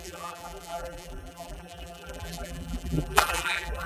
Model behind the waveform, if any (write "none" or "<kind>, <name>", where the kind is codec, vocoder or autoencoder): vocoder, BigVGAN v2